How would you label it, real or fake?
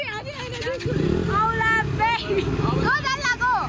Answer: real